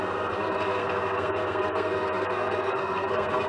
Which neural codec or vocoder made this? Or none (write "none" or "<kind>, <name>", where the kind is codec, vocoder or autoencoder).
codec, SNAC